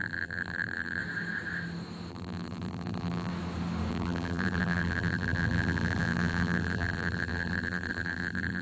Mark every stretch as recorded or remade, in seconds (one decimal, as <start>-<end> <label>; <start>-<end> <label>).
0.0-1.0 remade; 1.0-2.1 recorded; 2.1-3.3 remade; 3.3-3.9 recorded; 3.9-8.6 remade